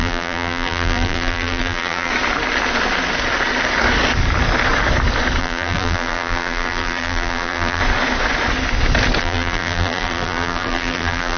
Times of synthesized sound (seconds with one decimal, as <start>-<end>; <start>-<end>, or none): 0.0-2.1; 5.4-7.8; 9.2-11.4

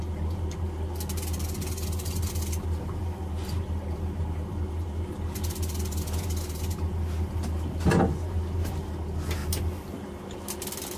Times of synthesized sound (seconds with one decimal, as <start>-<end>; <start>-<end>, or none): none

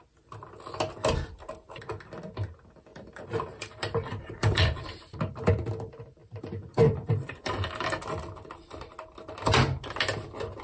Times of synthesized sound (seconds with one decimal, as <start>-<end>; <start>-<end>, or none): 2.9-5.5; 6.2-8.0

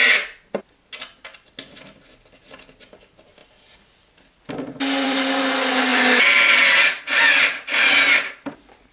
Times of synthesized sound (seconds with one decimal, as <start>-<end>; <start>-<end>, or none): 3.4-5.4; 5.9-7.2

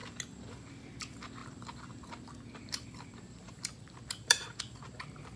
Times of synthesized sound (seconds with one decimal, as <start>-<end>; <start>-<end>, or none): 1.4-4.6

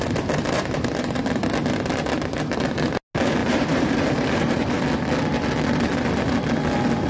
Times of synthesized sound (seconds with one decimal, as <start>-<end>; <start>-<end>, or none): 3.4-4.8

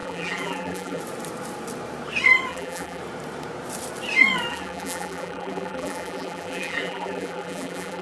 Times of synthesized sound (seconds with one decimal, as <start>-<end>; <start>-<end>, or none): 0.0-1.0; 2.5-3.0; 4.5-8.0

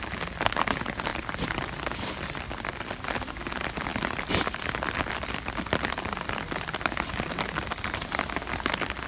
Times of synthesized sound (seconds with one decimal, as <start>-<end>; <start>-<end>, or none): 1.1-2.5